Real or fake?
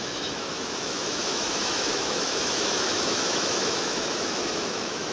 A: fake